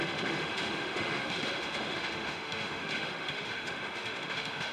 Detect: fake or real fake